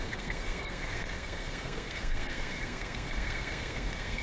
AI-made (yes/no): yes